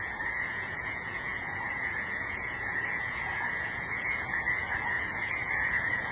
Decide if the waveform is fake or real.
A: fake